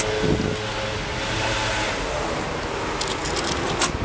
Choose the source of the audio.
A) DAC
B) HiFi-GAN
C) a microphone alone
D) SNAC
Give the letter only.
C